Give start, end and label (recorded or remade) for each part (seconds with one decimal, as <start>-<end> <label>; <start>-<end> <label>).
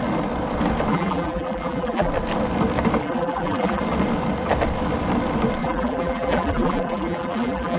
0.0-0.9 recorded; 0.9-2.1 remade; 2.1-3.0 recorded; 3.0-3.8 remade; 3.8-5.6 recorded; 5.6-7.8 remade